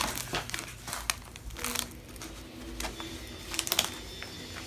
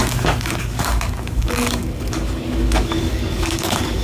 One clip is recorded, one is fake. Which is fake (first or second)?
second